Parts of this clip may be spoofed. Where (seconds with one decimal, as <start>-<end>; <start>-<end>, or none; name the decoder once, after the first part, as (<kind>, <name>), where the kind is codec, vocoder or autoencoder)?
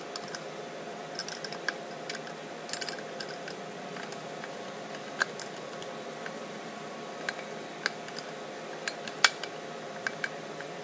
1.2-1.9 (vocoder, BigVGAN v2); 5.8-6.8